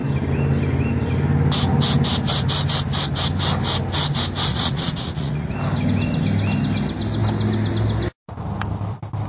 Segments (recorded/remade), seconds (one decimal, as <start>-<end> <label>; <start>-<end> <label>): 0.0-4.5 recorded; 4.5-5.5 remade; 5.5-9.3 recorded